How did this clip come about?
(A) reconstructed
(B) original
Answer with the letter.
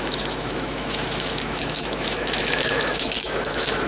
A